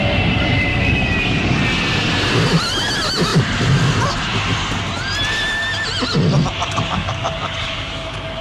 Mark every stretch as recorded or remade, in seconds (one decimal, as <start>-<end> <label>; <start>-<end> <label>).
0.0-0.7 recorded; 0.7-1.6 remade; 1.6-6.6 recorded; 6.6-8.4 remade